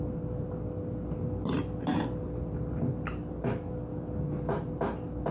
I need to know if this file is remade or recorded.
recorded